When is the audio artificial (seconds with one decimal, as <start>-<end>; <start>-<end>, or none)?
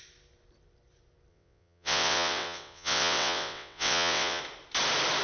1.3-4.4